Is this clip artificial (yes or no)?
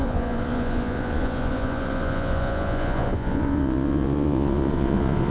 yes